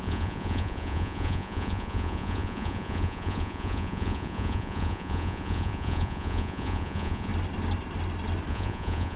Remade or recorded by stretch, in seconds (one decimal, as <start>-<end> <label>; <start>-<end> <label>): 0.0-7.3 remade; 7.3-8.5 recorded; 8.5-9.2 remade